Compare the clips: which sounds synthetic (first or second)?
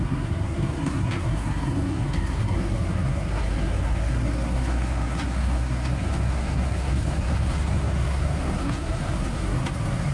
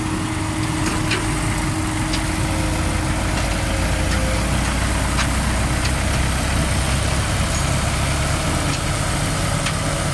first